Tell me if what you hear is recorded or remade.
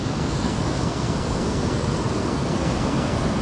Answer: remade